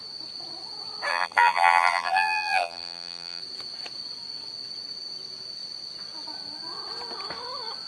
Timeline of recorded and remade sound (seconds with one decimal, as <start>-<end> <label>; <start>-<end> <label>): 0.0-1.1 recorded; 1.1-3.4 remade; 3.4-7.9 recorded